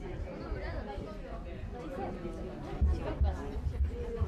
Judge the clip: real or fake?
real